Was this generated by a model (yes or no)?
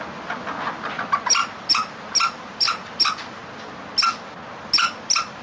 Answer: no